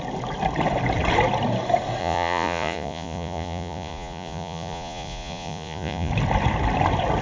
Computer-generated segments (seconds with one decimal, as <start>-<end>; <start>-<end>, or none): 2.0-6.1